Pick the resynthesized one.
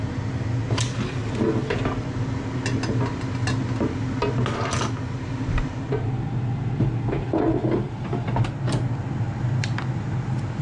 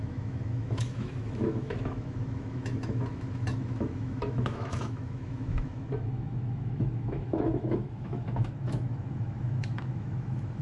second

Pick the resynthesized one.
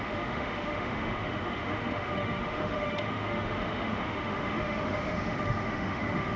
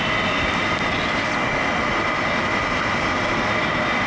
first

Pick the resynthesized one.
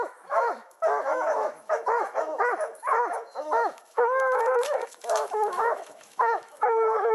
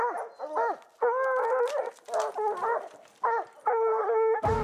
first